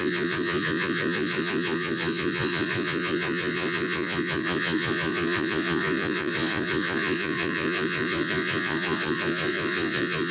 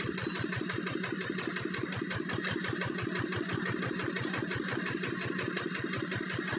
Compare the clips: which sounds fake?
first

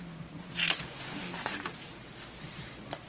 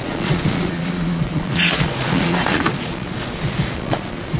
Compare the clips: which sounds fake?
second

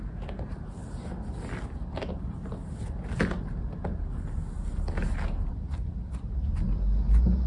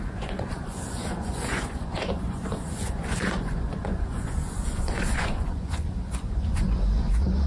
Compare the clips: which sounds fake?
second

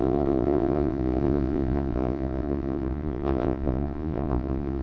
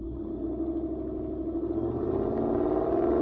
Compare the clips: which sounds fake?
first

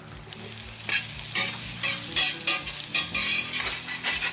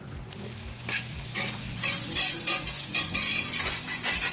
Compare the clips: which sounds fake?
second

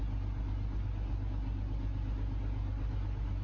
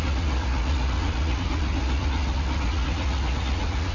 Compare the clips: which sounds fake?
second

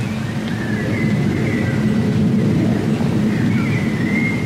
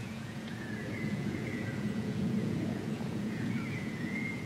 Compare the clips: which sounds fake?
second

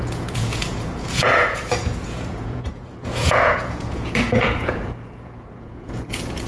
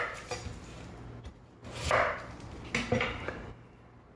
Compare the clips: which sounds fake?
first